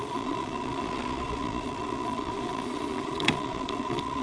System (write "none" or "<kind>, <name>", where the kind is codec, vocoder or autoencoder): vocoder, Vocos